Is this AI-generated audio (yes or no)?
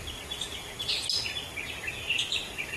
no